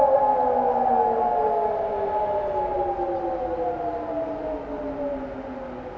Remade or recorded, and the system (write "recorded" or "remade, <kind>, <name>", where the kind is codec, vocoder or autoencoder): recorded